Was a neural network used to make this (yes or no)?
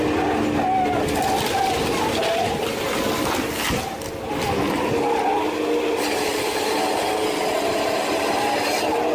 no